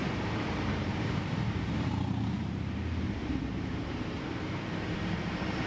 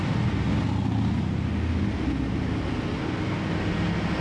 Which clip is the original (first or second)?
second